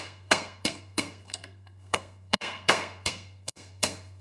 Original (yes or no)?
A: no